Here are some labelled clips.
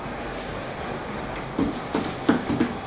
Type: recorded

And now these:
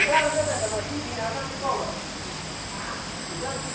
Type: recorded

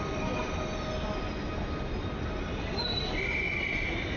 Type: recorded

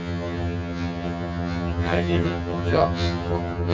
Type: remade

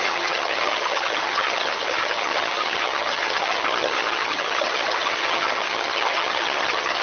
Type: remade